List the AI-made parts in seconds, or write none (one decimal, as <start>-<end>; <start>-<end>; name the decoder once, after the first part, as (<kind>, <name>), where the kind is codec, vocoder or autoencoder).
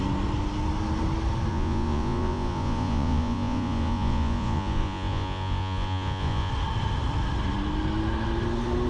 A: 1.5-6.5 (vocoder, Vocos)